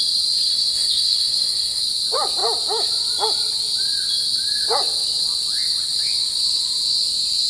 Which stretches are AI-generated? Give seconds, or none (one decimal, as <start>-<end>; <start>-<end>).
0.5-1.8